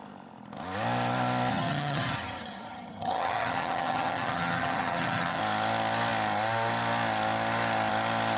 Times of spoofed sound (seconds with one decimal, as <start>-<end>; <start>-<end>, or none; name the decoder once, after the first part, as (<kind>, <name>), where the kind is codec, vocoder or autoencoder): 1.5-5.4 (vocoder, HiFi-GAN)